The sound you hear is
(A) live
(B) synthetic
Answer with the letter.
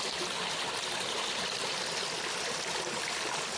A